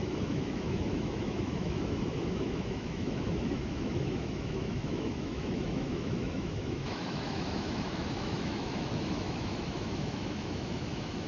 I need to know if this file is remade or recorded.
remade